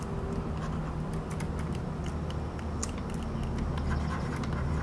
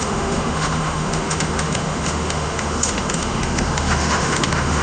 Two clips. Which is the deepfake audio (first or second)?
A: second